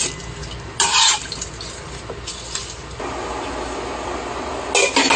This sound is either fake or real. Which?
real